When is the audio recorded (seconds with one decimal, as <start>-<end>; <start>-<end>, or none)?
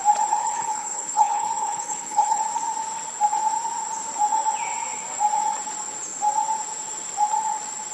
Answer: 0.0-0.4; 2.4-7.9